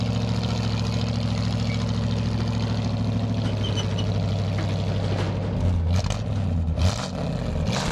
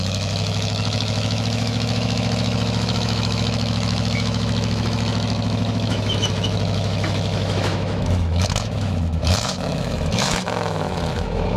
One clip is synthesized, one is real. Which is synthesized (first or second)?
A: second